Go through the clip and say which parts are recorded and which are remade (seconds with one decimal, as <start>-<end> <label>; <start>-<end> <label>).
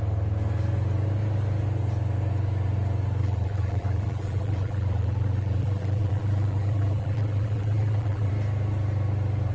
0.0-3.2 recorded; 3.2-8.3 remade; 8.3-9.5 recorded